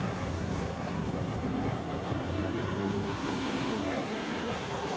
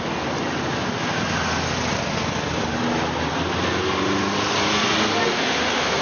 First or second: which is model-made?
first